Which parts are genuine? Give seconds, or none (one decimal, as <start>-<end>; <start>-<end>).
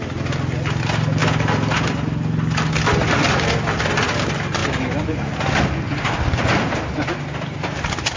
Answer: 0.0-8.2